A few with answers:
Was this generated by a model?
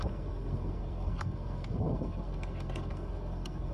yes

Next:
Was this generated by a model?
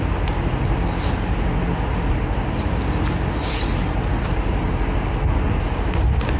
no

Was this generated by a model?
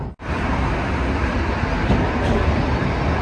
no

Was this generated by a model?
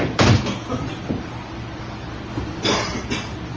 no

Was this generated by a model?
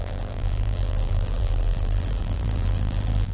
yes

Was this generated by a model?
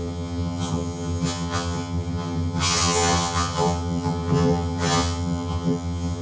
yes